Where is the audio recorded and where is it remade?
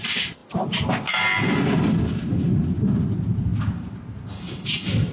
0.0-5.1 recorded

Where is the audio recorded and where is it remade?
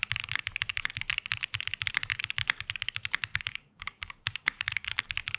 0.0-3.3 recorded; 3.3-5.0 remade; 5.0-5.4 recorded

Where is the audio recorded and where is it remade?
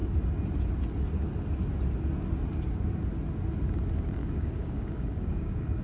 0.0-4.2 recorded; 4.2-5.8 remade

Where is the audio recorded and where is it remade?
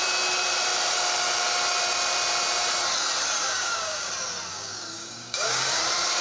0.0-3.4 recorded; 3.4-4.1 remade; 4.1-4.5 recorded; 4.5-5.8 remade; 5.8-6.2 recorded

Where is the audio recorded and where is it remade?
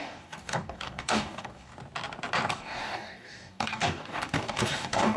0.0-1.7 remade; 1.7-2.5 recorded; 2.5-5.2 remade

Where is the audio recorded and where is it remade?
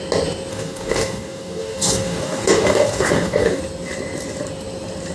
0.0-0.5 recorded; 0.5-3.6 remade; 3.6-5.1 recorded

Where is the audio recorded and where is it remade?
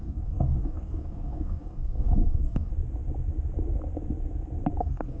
0.0-2.7 remade; 2.7-4.8 recorded; 4.8-5.2 remade